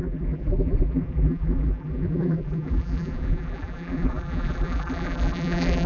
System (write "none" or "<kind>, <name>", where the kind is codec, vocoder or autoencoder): vocoder, BigVGAN v2